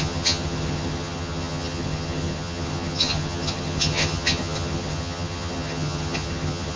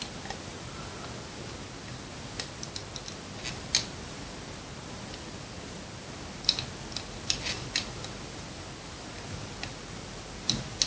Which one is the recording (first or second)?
second